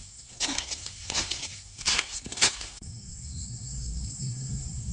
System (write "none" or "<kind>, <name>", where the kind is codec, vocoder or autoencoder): codec, SNAC